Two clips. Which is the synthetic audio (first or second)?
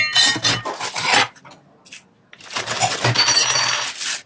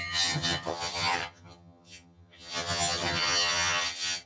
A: second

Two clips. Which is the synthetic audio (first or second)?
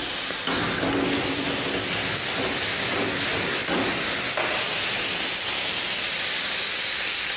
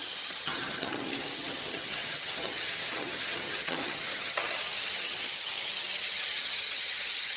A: second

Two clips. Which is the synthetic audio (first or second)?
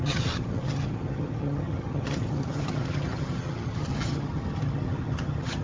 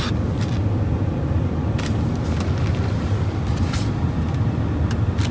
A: first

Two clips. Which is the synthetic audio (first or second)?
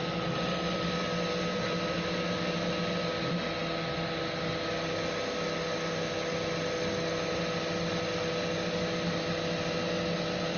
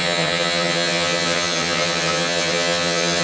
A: second